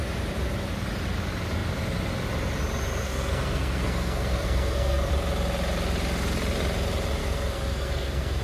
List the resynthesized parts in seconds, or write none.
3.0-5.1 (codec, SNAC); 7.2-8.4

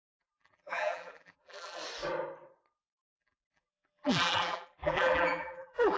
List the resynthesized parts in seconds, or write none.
0.0-1.8 (vocoder, BigVGAN v2); 2.9-6.0

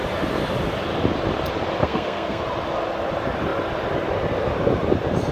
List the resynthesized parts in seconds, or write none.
1.8-2.4 (codec, SNAC)

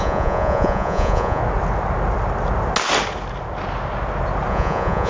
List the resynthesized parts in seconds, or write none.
0.0-1.4 (vocoder, Vocos); 4.5-5.1